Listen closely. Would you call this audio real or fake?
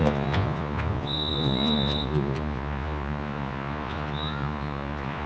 fake